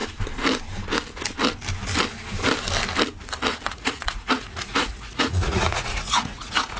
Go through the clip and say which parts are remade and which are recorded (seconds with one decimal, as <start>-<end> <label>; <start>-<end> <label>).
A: 0.0-3.7 recorded; 3.7-6.8 remade